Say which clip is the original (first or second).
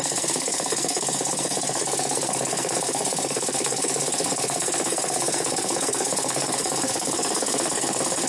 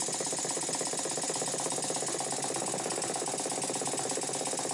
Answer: second